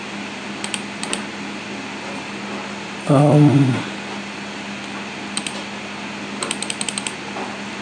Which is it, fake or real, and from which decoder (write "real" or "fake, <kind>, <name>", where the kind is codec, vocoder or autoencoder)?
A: real